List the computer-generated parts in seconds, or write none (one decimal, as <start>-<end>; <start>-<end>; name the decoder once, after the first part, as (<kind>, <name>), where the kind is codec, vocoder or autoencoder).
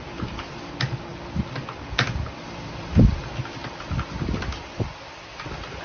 none